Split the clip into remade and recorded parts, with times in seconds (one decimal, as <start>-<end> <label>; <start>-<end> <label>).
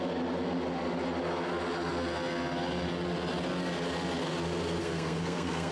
0.0-4.8 recorded; 4.8-5.7 remade